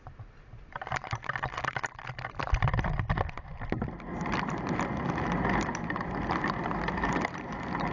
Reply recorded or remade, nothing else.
recorded